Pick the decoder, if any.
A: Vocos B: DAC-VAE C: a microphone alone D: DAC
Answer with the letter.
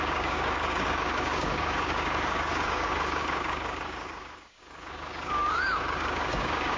D